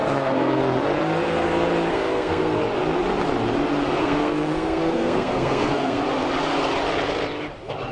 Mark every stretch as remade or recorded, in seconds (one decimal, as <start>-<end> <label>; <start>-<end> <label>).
0.0-0.6 remade; 0.6-1.9 recorded; 1.9-2.6 remade; 2.6-4.0 recorded; 4.0-6.0 remade; 6.0-7.9 recorded